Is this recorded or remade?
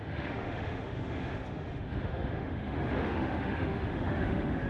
remade